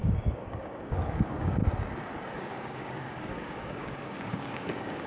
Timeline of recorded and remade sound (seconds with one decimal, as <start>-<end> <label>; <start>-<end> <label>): 0.0-1.6 remade; 1.6-2.4 recorded; 2.4-5.1 remade